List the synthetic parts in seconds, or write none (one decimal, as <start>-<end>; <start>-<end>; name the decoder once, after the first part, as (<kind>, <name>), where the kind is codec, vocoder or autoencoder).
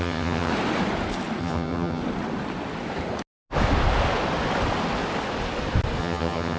0.0-0.5 (vocoder, HiFi-GAN); 1.4-2.0; 6.0-6.6